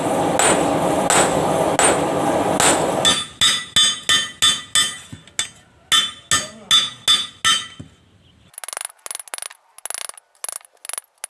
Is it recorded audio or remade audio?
recorded